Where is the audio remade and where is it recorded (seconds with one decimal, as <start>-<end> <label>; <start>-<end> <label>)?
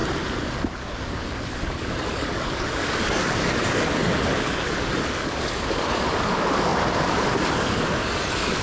0.0-0.8 recorded; 0.8-8.6 remade